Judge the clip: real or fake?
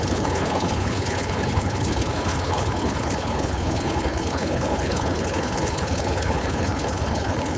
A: fake